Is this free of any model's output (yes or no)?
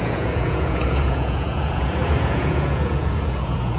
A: no